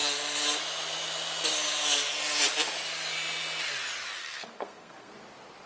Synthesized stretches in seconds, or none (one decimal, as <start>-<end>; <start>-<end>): 4.2-5.1